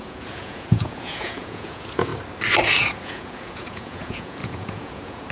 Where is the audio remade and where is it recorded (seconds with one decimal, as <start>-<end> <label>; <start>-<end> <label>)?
0.0-2.1 remade; 2.1-2.7 recorded; 2.7-5.3 remade